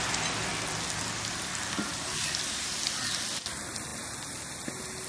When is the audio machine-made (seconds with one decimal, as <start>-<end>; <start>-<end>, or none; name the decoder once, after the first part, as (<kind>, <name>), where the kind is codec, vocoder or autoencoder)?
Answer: none

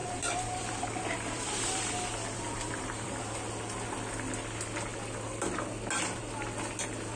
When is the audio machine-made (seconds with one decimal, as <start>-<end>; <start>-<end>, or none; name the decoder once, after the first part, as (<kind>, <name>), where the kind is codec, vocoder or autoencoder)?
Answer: 0.0-3.2 (vocoder, BigVGAN v2)

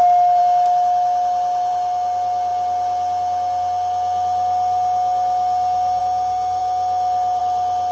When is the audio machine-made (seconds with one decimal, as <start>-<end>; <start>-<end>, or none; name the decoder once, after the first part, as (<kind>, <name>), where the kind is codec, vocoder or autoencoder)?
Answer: none

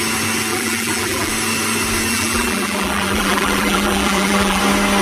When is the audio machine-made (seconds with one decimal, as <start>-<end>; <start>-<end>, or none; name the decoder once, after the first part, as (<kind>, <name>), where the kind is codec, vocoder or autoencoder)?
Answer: 0.5-1.3 (vocoder, BigVGAN v2); 2.1-4.6